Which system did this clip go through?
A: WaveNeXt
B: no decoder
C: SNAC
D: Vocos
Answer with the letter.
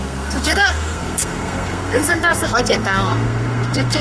C